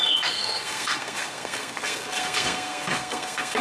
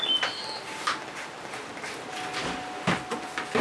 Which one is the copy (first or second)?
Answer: first